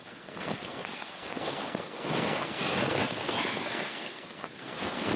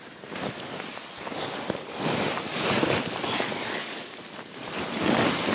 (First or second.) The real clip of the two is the second